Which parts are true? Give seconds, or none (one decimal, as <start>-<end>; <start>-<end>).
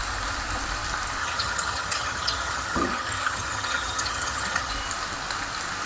0.0-1.2; 4.7-5.9